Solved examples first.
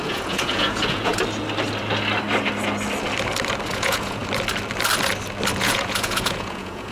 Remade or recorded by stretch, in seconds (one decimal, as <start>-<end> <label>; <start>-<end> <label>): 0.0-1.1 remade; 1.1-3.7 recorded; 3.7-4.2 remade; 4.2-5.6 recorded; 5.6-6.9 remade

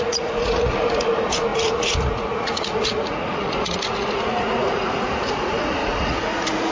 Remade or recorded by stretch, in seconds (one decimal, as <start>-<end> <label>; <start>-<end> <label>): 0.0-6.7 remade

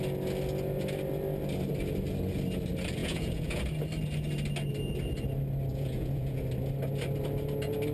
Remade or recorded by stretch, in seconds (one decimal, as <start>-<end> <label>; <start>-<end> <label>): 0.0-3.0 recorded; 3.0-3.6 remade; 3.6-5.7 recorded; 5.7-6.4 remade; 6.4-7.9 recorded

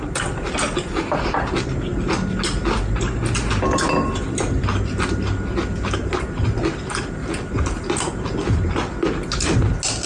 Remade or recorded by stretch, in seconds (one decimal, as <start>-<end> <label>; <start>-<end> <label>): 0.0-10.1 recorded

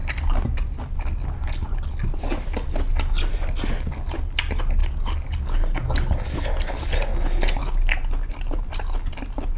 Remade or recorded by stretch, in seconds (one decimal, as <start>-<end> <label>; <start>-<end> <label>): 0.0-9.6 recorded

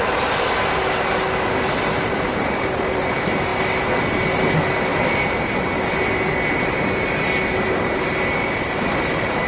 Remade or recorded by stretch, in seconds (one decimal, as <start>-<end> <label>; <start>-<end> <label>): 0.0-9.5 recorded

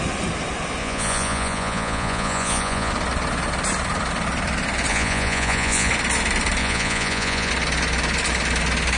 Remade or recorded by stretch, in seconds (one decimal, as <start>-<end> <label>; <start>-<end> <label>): 0.0-0.8 recorded; 0.8-2.9 remade; 2.9-4.9 recorded; 4.9-5.9 remade; 5.9-6.6 recorded; 6.6-7.5 remade; 7.5-9.0 recorded

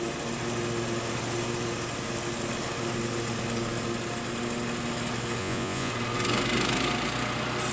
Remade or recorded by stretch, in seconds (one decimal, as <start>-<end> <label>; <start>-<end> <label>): 0.0-5.4 recorded; 5.4-5.9 remade; 5.9-7.7 recorded